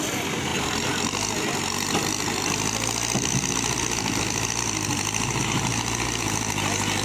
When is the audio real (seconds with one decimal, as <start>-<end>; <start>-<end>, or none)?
0.0-7.0